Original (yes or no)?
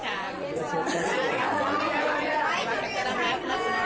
no